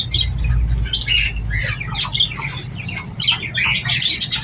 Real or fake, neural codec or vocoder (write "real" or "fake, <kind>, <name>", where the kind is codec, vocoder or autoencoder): real